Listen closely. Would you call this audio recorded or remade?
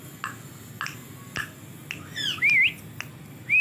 recorded